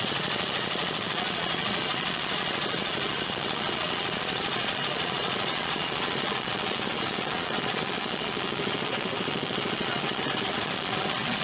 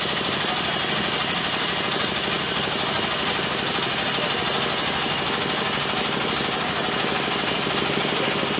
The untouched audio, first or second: second